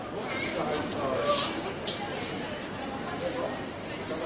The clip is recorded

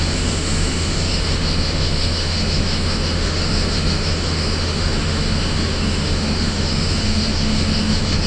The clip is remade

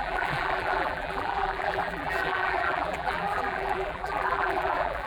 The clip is remade